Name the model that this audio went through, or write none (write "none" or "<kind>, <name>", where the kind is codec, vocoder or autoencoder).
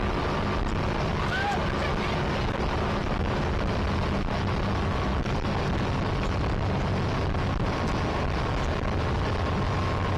none